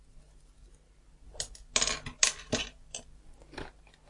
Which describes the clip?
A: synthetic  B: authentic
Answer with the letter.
B